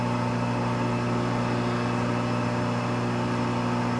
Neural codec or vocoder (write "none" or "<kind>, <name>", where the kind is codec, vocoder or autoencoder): none